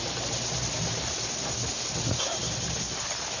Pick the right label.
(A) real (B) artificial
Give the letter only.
A